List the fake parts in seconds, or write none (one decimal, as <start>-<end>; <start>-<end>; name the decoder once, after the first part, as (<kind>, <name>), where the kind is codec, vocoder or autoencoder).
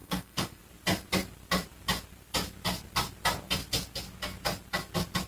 0.0-0.6 (codec, SNAC)